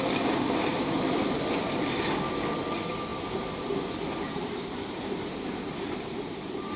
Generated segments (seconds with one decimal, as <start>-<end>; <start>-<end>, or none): 0.7-2.0; 3.1-6.8